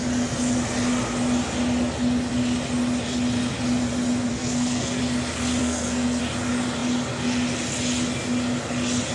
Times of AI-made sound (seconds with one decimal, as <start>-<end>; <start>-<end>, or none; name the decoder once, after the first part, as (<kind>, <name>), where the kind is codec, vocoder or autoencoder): 4.3-5.0 (codec, SNAC); 5.6-6.2